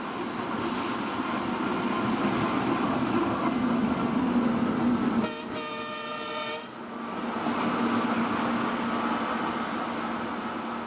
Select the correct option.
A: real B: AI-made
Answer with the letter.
A